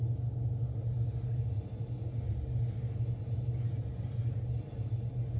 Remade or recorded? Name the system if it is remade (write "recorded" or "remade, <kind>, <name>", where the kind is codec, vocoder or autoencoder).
recorded